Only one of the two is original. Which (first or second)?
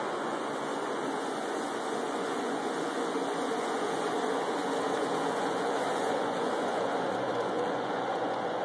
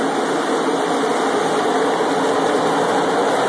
second